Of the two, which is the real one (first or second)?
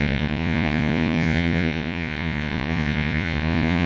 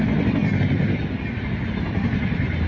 second